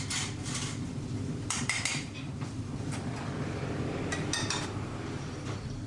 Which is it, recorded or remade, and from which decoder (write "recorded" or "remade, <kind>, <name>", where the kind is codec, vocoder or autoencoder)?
remade, vocoder, BigVGAN v2